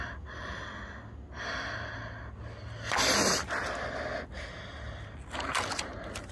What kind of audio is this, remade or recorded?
recorded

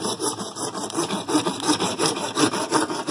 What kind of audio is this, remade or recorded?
remade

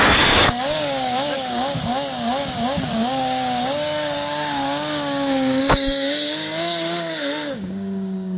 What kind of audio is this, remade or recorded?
remade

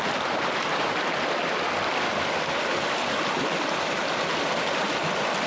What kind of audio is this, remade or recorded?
recorded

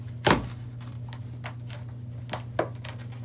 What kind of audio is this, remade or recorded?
recorded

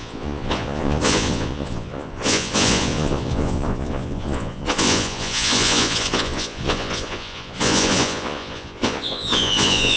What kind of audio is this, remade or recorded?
remade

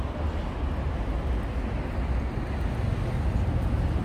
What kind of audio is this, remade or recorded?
recorded